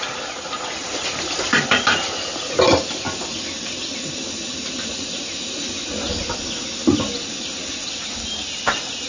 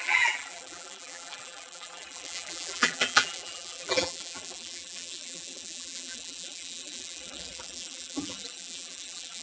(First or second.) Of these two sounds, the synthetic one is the second